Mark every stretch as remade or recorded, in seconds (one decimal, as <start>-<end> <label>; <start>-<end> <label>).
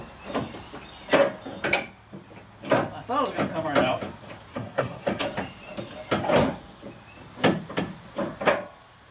0.0-4.5 recorded; 4.5-5.2 remade; 5.2-9.1 recorded